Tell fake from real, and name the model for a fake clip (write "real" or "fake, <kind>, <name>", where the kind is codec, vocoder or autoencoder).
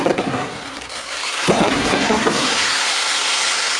fake, codec, SNAC